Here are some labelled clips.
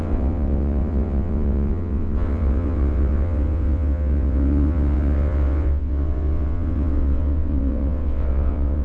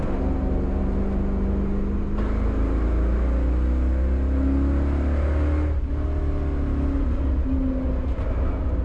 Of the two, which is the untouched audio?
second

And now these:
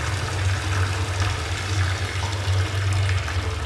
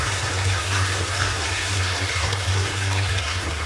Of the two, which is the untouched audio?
first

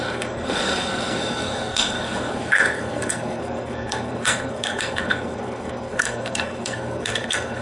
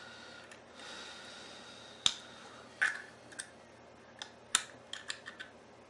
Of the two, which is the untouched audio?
second